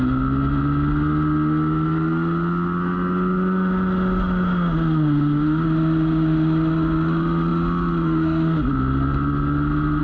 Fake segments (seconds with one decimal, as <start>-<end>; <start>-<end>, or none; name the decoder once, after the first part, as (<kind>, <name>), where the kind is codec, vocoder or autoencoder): none